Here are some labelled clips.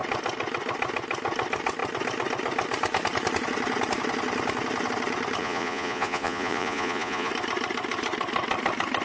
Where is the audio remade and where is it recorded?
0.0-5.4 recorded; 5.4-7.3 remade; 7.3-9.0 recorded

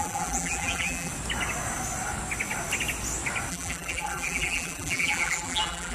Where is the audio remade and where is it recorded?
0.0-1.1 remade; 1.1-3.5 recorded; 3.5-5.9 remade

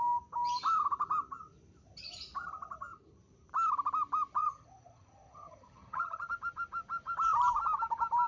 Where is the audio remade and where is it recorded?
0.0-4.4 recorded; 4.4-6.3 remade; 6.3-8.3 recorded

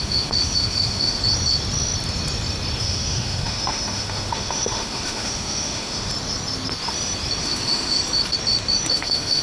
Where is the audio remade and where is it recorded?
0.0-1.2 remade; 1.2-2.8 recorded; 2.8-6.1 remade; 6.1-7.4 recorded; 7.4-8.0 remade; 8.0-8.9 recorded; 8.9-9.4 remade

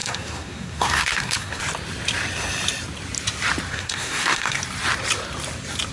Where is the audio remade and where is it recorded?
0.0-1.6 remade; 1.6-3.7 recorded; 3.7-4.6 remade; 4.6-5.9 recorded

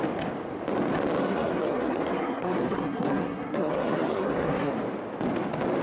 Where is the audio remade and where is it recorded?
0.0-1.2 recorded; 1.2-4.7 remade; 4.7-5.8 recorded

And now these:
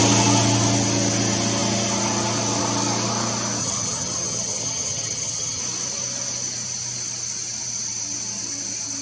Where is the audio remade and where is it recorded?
0.0-3.6 recorded; 3.6-5.6 remade; 5.6-9.0 recorded

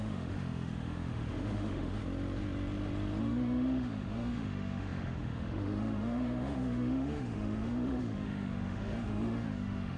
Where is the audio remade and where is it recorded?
0.0-2.0 remade; 2.0-3.2 recorded; 3.2-10.0 remade